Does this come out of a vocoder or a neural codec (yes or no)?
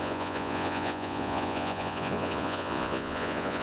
yes